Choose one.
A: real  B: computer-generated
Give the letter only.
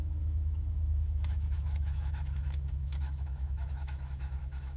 B